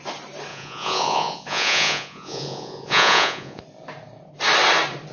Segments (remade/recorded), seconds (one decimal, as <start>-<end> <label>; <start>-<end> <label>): 0.0-0.5 recorded; 0.5-3.6 remade; 3.6-5.1 recorded